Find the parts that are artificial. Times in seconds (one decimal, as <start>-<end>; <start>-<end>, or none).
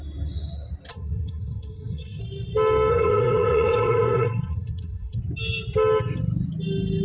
0.9-2.2; 2.9-5.2